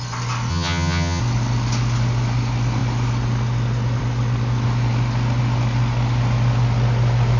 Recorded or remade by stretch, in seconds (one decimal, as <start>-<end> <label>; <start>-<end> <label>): 0.0-0.5 recorded; 0.5-1.2 remade; 1.2-7.4 recorded